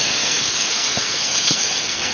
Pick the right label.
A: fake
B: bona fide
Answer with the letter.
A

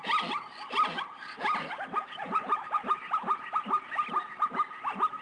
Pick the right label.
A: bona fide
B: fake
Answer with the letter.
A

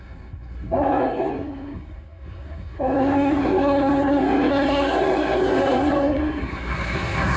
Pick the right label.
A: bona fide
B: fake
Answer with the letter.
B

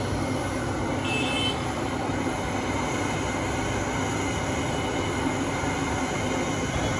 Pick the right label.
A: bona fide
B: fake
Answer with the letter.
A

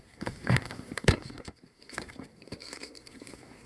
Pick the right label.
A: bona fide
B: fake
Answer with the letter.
B